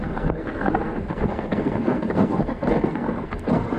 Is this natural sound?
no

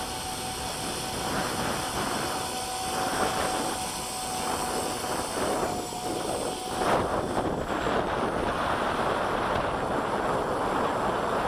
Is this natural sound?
yes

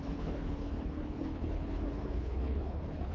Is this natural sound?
no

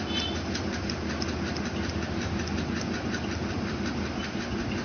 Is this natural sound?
yes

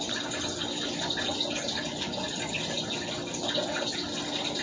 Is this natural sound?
yes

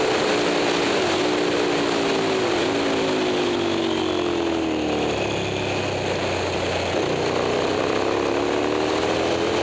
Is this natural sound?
yes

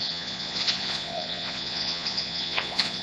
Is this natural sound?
no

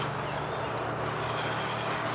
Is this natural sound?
yes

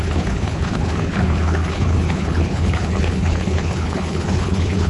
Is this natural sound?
no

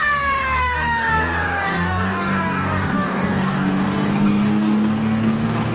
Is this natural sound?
no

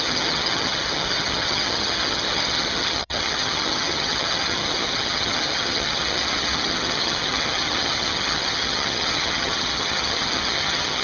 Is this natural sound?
no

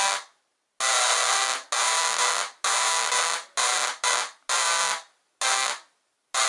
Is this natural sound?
yes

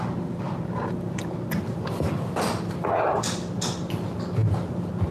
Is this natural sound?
yes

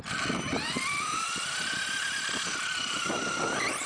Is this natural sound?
yes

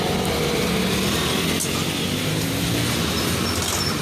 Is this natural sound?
yes